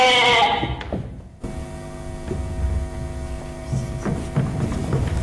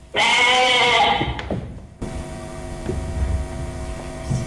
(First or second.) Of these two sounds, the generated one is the second